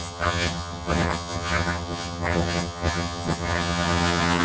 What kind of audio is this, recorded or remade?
remade